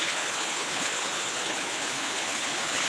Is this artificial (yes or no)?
yes